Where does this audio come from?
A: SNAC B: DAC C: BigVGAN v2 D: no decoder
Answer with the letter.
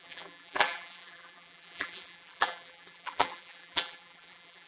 C